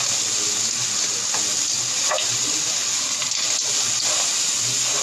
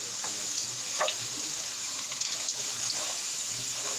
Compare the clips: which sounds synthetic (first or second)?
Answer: second